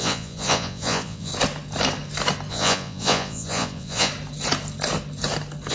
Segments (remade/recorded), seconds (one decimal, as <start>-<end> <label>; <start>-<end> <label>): 0.0-1.3 remade; 1.3-2.5 recorded; 2.5-4.1 remade; 4.1-5.7 recorded